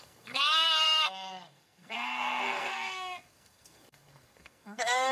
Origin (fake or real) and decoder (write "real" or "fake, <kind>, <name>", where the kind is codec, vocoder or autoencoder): fake, codec, SNAC